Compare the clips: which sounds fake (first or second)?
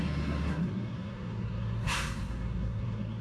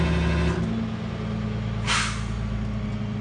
first